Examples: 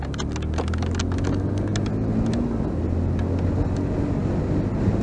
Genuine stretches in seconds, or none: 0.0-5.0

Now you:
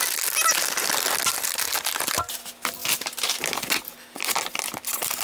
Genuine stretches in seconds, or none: 0.0-5.2